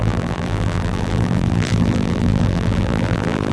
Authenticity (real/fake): fake